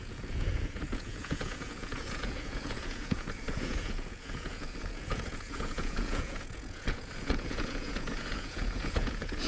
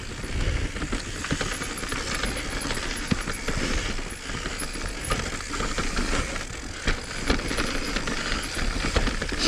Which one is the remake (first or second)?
first